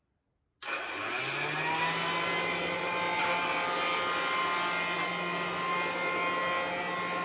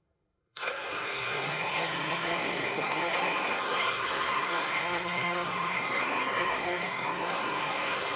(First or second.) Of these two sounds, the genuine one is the first